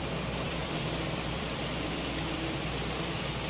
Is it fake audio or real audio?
fake